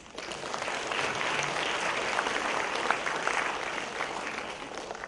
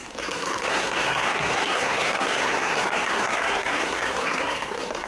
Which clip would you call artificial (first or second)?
second